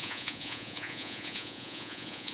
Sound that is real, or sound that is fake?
fake